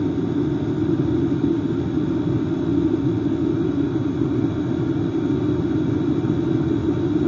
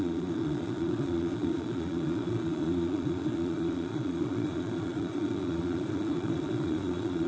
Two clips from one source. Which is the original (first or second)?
first